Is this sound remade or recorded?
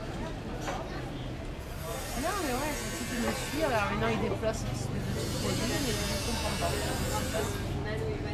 recorded